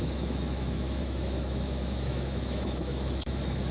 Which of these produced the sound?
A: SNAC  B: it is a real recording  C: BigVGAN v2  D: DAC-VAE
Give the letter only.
D